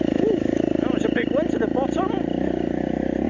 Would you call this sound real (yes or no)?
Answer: yes